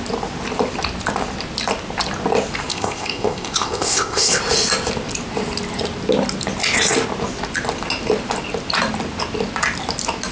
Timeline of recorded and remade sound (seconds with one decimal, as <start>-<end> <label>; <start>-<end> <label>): 0.0-2.7 recorded; 2.7-4.4 remade; 4.4-10.3 recorded